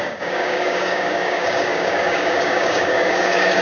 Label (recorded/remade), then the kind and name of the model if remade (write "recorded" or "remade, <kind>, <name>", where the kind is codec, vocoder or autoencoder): remade, codec, DAC